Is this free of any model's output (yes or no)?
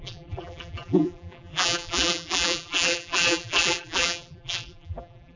no